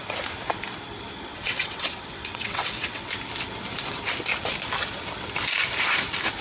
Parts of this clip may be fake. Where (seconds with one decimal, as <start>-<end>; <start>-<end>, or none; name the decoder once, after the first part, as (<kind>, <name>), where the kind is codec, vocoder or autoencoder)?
1.3-3.1 (vocoder, WaveNeXt)